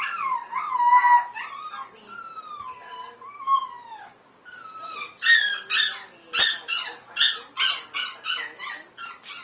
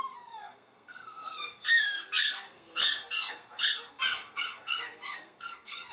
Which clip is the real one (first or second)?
first